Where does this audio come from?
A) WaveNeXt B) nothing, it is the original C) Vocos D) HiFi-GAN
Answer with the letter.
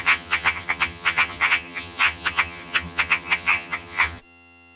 D